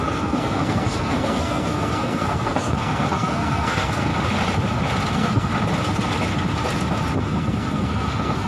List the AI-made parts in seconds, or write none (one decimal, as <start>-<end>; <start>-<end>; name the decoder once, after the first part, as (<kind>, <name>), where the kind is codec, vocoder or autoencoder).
0.0-4.1 (codec, SNAC); 5.1-5.5; 7.2-8.5